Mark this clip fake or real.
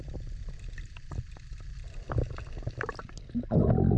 real